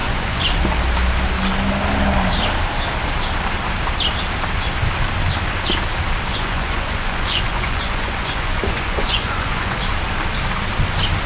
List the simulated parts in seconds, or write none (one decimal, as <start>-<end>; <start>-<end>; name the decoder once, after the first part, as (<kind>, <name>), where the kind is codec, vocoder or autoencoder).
0.0-0.7 (vocoder, Vocos); 6.3-9.8